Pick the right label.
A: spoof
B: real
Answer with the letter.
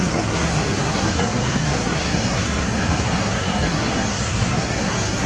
A